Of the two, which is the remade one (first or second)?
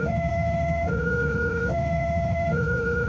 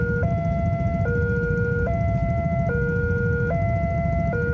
first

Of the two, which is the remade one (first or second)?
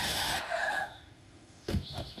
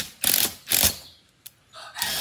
first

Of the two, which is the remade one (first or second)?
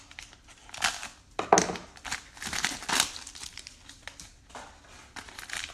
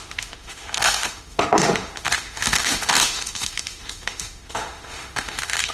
second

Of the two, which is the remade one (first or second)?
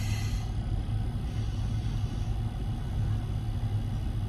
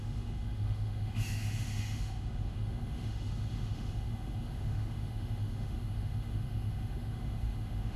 second